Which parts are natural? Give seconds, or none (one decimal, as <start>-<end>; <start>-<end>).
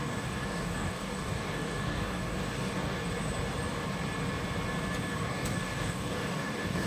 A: 3.0-5.1